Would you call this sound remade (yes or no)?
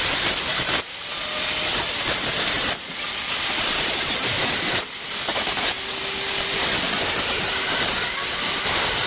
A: no